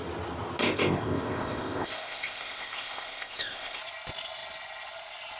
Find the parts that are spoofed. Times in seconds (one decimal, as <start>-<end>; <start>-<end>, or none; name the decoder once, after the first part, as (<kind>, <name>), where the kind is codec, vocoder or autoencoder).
0.6-3.8 (codec, ZipCodec)